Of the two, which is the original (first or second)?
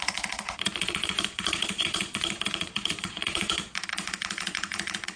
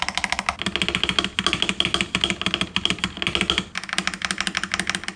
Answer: second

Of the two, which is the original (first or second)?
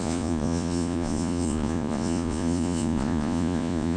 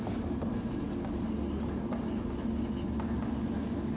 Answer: second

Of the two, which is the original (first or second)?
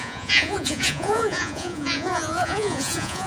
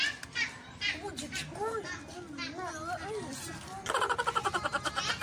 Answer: second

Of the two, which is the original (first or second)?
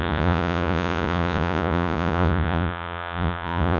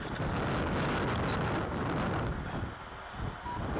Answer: second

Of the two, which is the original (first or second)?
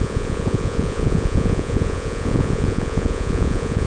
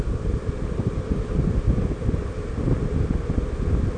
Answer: second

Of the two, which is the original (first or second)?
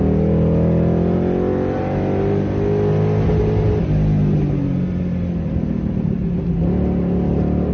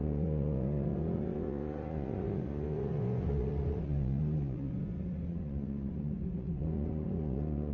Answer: first